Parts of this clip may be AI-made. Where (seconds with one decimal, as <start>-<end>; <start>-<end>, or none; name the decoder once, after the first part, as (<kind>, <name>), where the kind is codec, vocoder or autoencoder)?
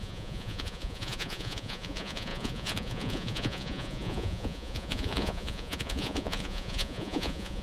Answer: 0.0-7.6 (vocoder, Vocos)